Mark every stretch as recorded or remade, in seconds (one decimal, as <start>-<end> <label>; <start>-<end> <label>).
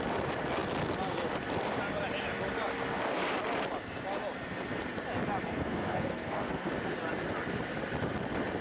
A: 0.0-5.5 recorded; 5.5-6.7 remade; 6.7-8.6 recorded